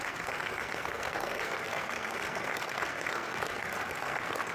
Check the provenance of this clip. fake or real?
fake